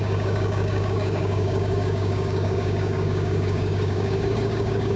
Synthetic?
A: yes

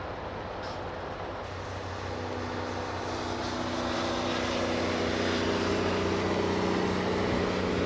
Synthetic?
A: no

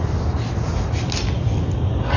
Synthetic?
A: no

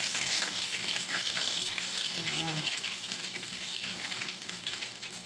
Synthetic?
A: yes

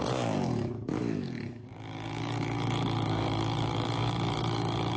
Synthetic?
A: yes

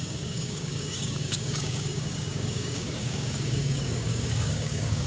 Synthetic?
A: yes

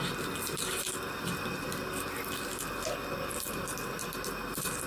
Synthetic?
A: no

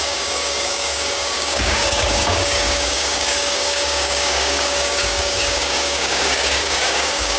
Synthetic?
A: yes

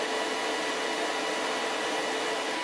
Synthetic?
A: no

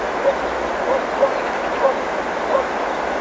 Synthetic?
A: no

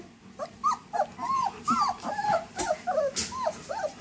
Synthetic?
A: no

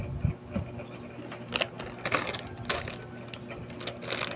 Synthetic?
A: no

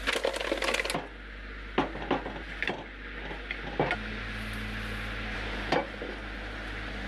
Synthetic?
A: no